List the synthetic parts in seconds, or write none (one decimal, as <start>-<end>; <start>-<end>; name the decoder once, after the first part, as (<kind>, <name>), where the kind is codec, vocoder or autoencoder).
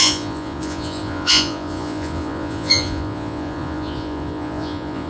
0.0-5.1 (vocoder, Vocos)